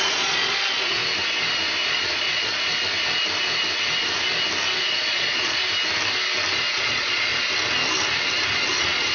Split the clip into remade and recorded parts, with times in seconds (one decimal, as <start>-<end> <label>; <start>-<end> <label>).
0.0-1.0 remade; 1.0-1.9 recorded; 1.9-2.5 remade; 2.5-4.8 recorded; 4.8-5.6 remade; 5.6-6.7 recorded; 6.7-7.3 remade; 7.3-8.7 recorded; 8.7-9.1 remade